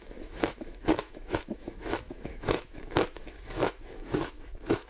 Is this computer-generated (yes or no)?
yes